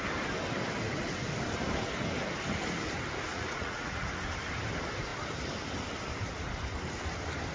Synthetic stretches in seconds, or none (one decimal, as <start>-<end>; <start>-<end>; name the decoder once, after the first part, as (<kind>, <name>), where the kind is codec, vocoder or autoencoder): 3.3-4.1 (vocoder, Vocos)